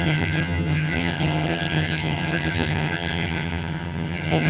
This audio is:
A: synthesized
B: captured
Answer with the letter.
A